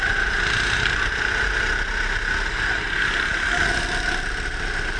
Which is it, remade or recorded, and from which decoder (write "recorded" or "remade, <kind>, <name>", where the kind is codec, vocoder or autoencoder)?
recorded